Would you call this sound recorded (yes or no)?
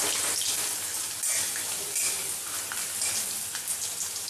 yes